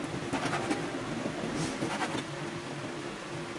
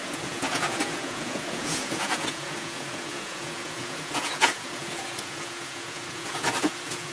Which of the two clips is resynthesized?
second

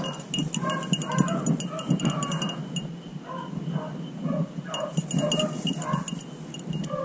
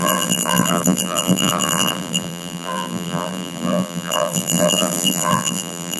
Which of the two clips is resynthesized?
second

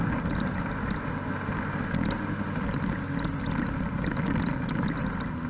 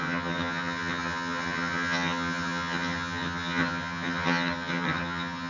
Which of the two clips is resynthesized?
second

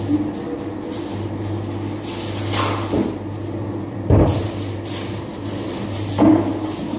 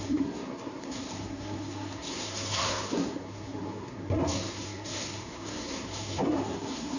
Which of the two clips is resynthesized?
second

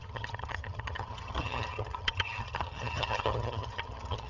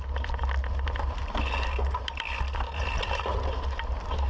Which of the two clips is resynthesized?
first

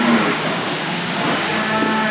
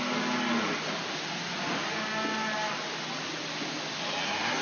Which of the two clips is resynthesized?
first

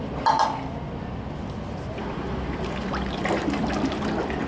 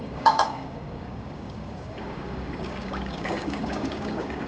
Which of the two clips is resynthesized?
second